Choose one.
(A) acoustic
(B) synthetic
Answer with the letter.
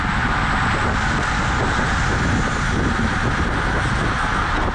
A